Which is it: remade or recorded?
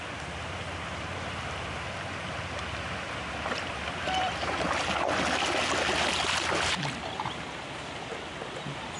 recorded